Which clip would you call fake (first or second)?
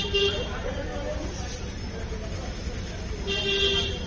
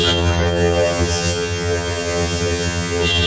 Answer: second